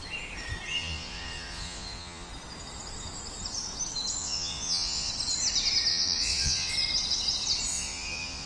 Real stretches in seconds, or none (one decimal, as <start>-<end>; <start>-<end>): 0.0-0.7; 2.3-4.2; 5.1-5.9; 6.7-7.7